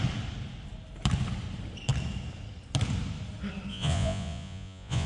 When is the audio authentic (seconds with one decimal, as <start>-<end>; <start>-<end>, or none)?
0.0-3.7